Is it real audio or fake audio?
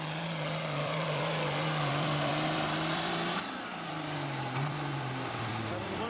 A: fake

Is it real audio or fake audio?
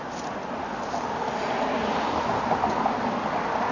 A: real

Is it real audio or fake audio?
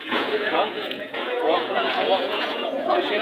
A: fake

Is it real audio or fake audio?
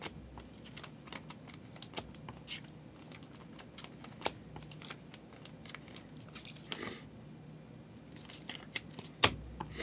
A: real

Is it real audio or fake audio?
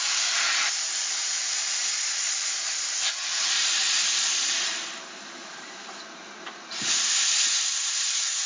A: fake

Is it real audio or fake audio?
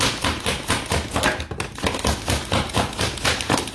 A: real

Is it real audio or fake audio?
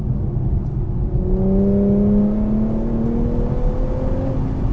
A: real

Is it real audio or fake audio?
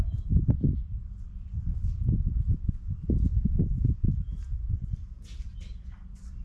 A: fake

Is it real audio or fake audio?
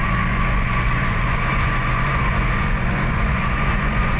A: fake